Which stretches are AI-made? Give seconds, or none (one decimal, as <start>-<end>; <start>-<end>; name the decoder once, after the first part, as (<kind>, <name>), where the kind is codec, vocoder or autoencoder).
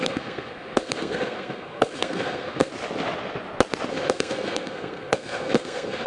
0.0-2.7 (codec, SNAC); 3.9-6.1